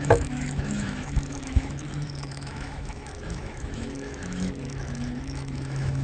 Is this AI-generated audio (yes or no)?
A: yes